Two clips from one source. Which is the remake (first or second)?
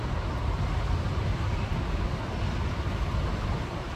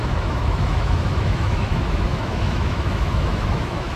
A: second